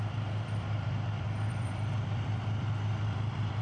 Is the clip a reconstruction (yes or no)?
yes